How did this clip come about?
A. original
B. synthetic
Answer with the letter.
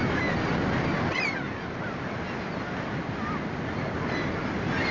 A